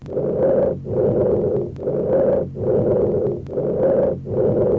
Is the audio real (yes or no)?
yes